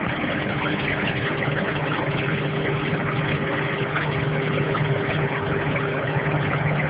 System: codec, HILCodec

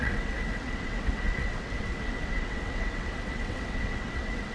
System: vocoder, WaveNeXt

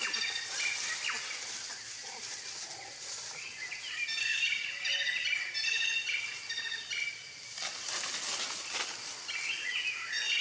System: none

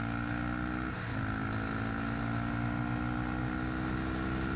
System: none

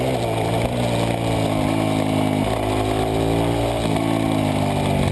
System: none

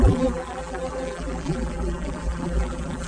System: vocoder, BigVGAN v2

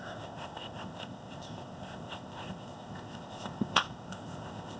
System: codec, ZipCodec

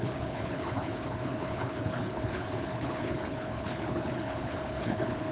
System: codec, HILCodec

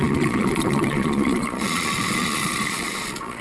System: vocoder, Vocos